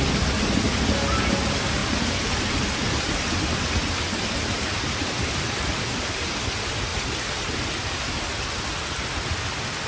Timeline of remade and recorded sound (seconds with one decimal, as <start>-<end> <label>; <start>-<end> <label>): 0.0-9.9 recorded